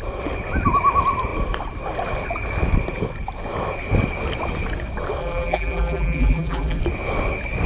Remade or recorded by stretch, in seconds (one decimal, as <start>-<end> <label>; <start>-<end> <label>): 0.0-5.2 recorded; 5.2-6.8 remade; 6.8-7.7 recorded